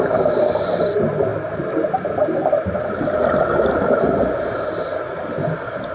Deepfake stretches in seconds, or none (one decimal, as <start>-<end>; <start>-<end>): none